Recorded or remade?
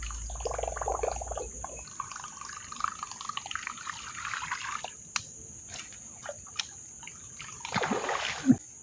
recorded